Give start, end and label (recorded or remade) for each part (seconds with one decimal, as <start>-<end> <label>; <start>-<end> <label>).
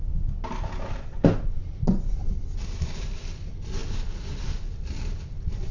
0.0-1.6 recorded; 1.6-2.4 remade; 2.4-5.7 recorded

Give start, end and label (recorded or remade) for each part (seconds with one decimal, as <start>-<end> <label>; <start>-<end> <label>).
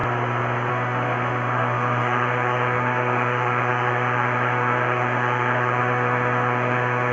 0.0-0.7 recorded; 0.7-7.1 remade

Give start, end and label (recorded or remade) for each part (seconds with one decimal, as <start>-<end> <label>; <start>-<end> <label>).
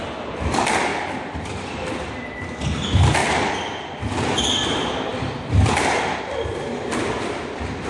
0.0-0.9 recorded; 0.9-2.1 remade; 2.1-3.2 recorded; 3.2-4.0 remade; 4.0-5.1 recorded; 5.1-6.7 remade; 6.7-7.9 recorded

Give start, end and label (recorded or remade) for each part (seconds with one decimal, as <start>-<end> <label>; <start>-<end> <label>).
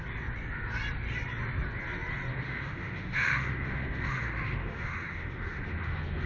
0.0-2.3 recorded; 2.3-6.3 remade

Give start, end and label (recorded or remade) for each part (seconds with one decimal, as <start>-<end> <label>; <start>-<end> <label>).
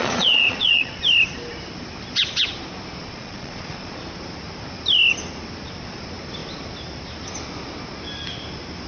0.0-1.0 remade; 1.0-3.0 recorded; 3.0-4.0 remade; 4.0-8.9 recorded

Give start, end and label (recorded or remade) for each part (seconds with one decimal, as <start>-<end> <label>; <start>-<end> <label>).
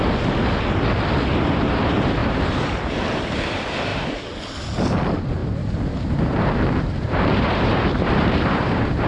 0.0-2.2 recorded; 2.2-3.2 remade; 3.2-5.4 recorded; 5.4-9.1 remade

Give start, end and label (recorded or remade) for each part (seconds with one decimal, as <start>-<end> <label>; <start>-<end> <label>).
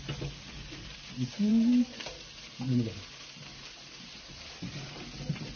0.0-5.6 recorded